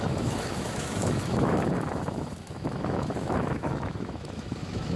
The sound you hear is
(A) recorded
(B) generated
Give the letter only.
B